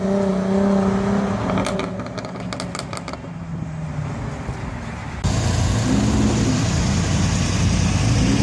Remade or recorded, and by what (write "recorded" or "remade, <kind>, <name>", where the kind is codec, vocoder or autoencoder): recorded